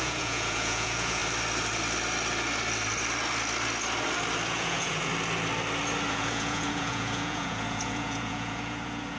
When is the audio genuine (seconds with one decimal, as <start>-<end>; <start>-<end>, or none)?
1.2-4.5; 5.1-6.1